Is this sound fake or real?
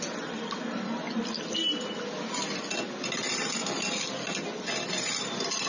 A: real